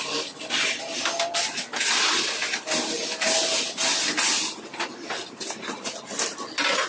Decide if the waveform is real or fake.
real